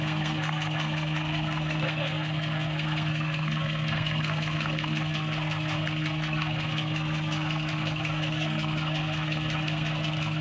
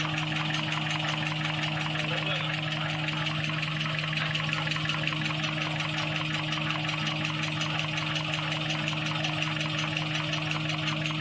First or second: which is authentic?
second